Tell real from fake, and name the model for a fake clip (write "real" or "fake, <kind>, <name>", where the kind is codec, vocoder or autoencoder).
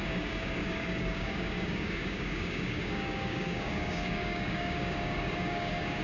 fake, codec, DAC